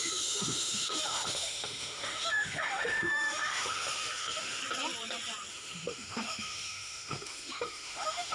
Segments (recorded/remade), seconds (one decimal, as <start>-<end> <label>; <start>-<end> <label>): 0.0-4.6 remade; 4.6-5.5 recorded; 5.5-8.3 remade